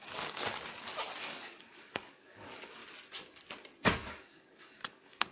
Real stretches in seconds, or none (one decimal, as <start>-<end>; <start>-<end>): 0.5-1.2; 2.8-4.1